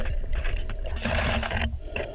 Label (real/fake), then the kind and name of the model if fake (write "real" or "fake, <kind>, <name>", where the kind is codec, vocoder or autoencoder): fake, vocoder, BigVGAN v2